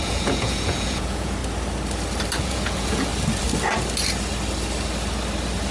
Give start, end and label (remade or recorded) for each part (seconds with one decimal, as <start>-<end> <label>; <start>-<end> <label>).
0.0-1.4 remade; 1.4-2.4 recorded; 2.4-3.1 remade; 3.1-5.7 recorded

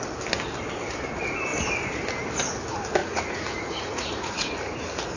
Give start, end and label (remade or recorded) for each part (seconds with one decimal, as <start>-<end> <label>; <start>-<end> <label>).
0.0-3.0 recorded; 3.0-4.5 remade; 4.5-5.2 recorded

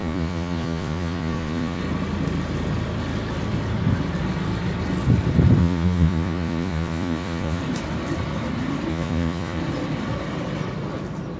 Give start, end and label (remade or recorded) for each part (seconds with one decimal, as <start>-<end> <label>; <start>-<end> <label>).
0.0-1.8 remade; 1.8-5.6 recorded; 5.6-7.6 remade; 7.6-8.9 recorded; 8.9-9.6 remade; 9.6-11.4 recorded

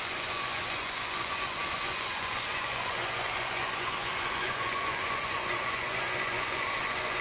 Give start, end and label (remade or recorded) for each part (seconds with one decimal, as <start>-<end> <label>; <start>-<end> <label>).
0.0-7.2 remade

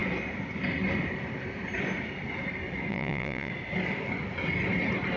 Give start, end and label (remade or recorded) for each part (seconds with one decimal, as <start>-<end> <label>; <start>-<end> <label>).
0.0-2.9 recorded; 2.9-3.5 remade; 3.5-5.2 recorded